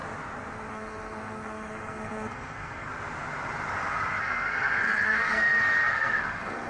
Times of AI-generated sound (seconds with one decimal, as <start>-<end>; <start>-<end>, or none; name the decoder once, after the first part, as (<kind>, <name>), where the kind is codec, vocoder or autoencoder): 0.7-2.9 (codec, SNAC); 4.2-6.7